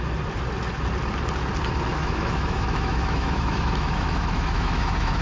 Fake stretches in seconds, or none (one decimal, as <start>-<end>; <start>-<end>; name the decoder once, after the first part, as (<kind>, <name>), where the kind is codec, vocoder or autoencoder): 1.9-5.2 (autoencoder, DAC-VAE)